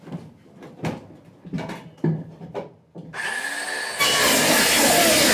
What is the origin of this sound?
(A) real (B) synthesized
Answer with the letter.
A